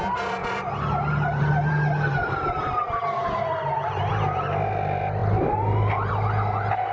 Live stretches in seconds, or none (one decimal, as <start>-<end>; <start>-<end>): 0.0-0.4; 4.1-6.9